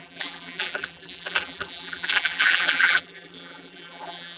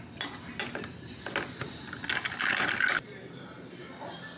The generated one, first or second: first